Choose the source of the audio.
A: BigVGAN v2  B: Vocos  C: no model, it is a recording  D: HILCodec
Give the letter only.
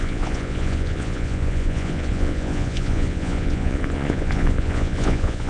B